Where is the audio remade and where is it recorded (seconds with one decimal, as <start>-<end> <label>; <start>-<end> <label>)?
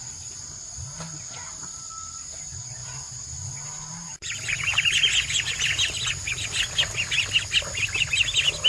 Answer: 0.0-8.7 recorded